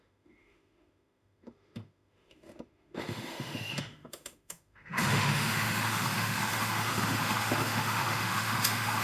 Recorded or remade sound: remade